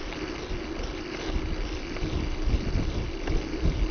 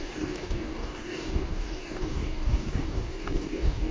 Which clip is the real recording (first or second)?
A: first